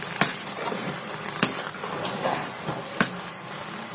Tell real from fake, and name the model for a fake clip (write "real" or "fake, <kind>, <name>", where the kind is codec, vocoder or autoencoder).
real